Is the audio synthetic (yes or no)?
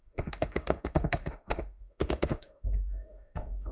yes